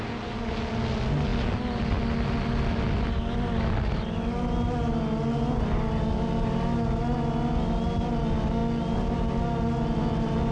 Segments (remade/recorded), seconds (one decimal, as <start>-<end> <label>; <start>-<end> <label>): 0.0-10.5 recorded